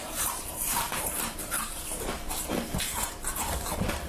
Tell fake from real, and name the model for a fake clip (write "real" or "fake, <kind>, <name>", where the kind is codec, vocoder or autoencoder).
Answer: fake, vocoder, BigVGAN v2